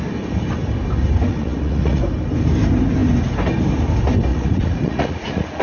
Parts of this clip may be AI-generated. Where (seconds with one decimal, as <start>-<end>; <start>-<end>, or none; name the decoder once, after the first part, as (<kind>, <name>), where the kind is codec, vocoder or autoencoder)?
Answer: 1.3-2.0 (vocoder, Vocos); 4.3-5.6